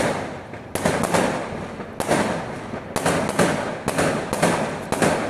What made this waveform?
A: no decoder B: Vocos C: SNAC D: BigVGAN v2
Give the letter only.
A